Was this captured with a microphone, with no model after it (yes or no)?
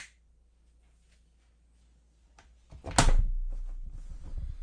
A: yes